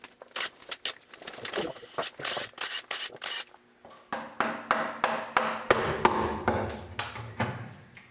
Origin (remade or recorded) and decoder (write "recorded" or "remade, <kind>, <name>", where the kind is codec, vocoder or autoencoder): recorded